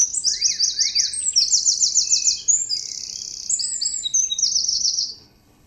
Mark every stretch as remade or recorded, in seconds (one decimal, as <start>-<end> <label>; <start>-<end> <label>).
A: 0.0-4.7 recorded; 4.7-5.7 remade